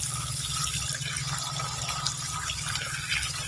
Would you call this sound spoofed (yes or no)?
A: no